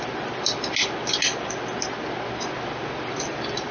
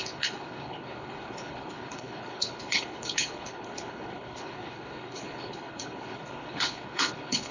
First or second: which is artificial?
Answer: second